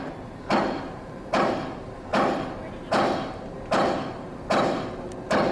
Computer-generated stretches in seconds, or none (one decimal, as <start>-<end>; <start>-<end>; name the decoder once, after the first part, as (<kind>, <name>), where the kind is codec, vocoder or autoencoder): none